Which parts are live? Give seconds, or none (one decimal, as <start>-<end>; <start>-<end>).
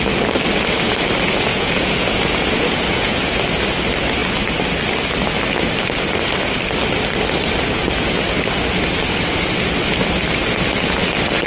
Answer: 0.0-1.5; 3.4-11.5